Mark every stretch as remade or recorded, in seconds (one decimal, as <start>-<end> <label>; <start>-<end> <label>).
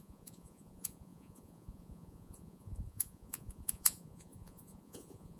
0.0-5.4 remade